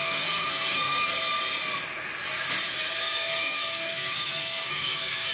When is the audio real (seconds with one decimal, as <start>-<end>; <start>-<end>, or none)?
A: 1.1-3.0